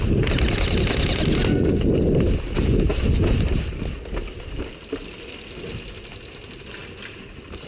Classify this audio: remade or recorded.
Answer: recorded